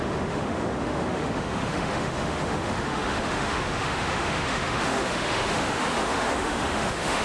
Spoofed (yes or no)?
yes